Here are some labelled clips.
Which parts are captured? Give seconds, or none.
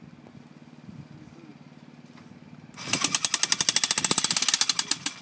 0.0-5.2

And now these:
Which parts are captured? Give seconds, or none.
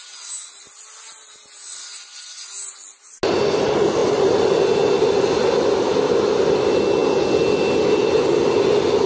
0.0-9.1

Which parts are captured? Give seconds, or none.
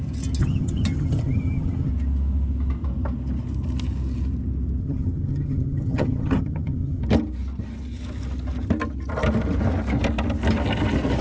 0.0-0.4; 1.9-4.8; 7.0-11.2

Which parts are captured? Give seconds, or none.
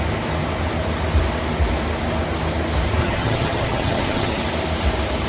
0.0-3.0; 4.4-5.3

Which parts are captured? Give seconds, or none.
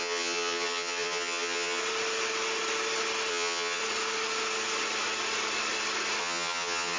1.8-3.3; 3.8-6.2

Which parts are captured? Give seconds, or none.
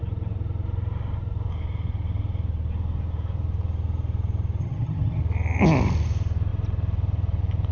0.0-4.6; 5.2-7.7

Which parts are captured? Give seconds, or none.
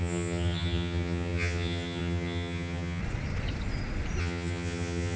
3.0-4.2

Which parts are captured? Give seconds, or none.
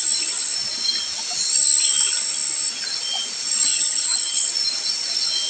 0.0-3.7; 4.5-5.5